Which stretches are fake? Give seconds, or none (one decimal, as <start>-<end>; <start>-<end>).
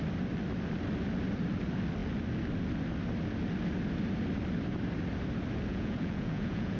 5.7-6.8